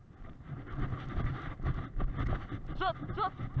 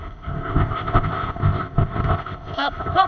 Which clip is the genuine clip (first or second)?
first